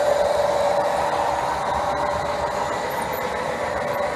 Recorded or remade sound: recorded